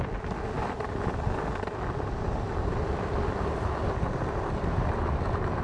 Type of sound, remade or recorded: recorded